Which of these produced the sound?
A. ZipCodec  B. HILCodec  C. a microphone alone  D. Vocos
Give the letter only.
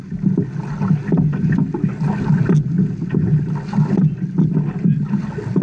C